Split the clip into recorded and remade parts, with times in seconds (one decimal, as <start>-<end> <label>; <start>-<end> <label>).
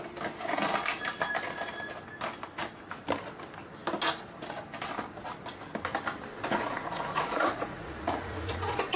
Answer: 0.0-6.3 recorded; 6.3-9.0 remade